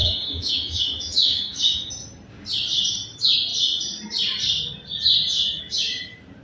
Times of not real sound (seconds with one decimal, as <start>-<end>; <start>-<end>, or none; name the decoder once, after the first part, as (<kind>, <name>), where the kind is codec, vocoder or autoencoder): 0.0-1.9 (autoencoder, DAC-VAE)